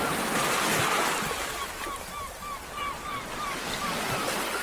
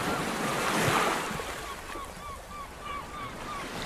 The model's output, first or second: second